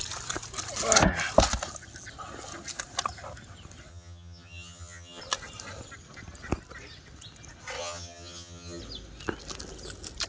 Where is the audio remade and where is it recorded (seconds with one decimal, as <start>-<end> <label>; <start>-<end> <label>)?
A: 0.0-3.9 recorded; 3.9-5.2 remade; 5.2-7.8 recorded; 7.8-8.8 remade; 8.8-10.3 recorded